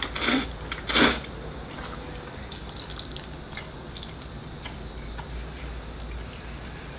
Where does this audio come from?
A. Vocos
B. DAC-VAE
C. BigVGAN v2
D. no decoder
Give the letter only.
D